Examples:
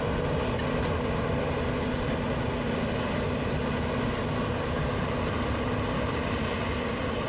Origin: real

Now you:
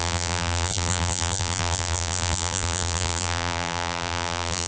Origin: fake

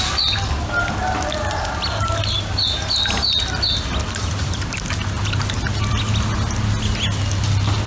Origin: real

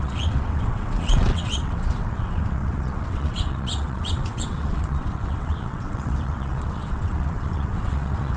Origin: fake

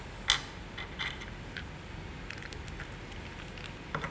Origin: real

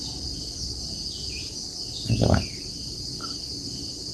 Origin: real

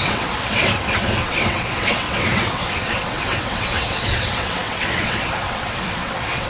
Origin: fake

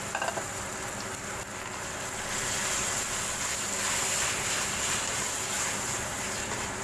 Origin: real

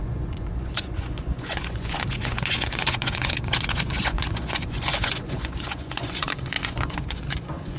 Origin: fake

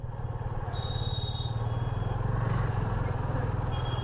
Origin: real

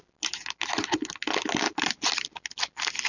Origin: real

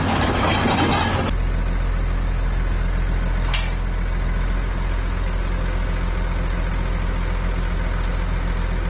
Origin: real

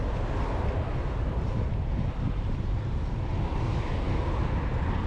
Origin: real